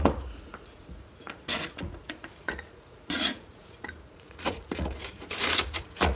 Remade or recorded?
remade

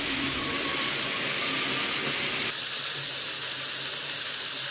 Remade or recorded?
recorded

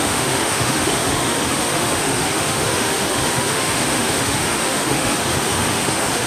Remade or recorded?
remade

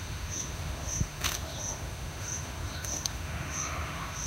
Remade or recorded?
remade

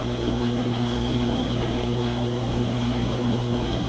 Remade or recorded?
remade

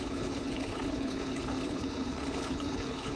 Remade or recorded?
remade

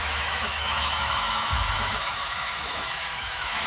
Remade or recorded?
remade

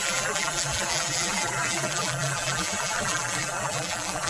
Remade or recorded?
remade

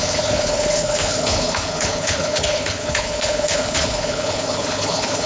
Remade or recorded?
remade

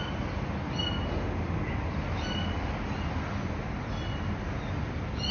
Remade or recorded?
recorded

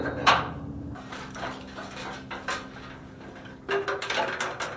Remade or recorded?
recorded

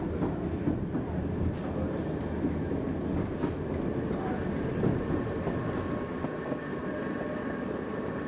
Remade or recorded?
recorded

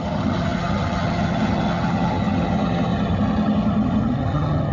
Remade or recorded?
remade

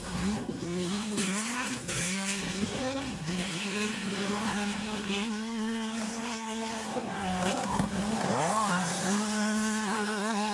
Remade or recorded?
remade